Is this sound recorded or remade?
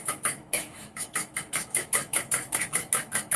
remade